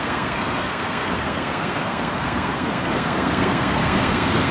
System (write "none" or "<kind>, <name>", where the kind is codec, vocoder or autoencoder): codec, SNAC